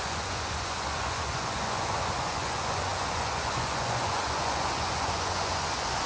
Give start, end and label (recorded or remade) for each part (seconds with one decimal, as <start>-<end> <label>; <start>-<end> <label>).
0.0-6.1 remade